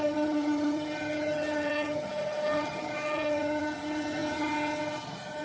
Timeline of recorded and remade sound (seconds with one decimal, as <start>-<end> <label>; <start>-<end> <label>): 0.0-5.4 remade